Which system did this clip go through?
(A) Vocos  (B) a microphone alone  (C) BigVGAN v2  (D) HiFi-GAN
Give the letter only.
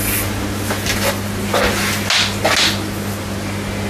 B